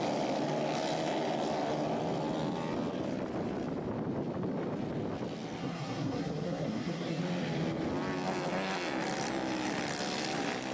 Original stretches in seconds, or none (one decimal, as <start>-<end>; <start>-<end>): 0.0-5.6; 7.2-10.7